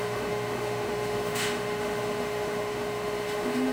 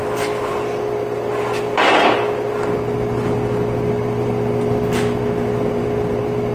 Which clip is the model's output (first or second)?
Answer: first